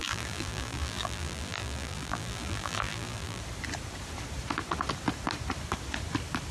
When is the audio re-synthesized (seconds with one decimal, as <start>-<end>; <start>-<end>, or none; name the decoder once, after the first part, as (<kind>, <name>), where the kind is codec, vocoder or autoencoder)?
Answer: 0.0-3.4 (vocoder, BigVGAN v2)